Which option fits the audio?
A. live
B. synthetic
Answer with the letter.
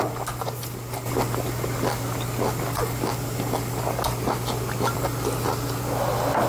A